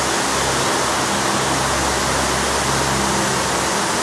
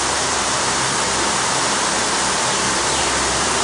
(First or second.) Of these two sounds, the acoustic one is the first